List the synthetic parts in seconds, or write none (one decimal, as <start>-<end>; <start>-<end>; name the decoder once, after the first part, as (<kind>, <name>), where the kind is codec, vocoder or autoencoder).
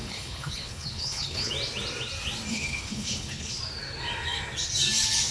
0.0-1.5 (codec, HILCodec); 2.5-3.6